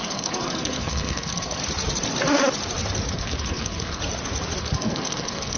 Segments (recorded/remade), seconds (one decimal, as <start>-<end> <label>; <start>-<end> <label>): 0.0-1.6 remade; 1.6-3.1 recorded; 3.1-4.0 remade; 4.0-4.6 recorded; 4.6-5.6 remade